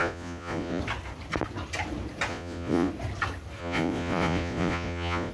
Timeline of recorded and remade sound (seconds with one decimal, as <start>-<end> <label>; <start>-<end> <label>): 0.0-0.8 remade; 0.8-2.3 recorded; 2.3-2.9 remade; 2.9-3.6 recorded; 3.6-5.3 remade